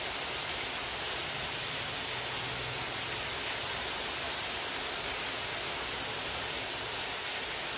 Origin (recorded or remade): recorded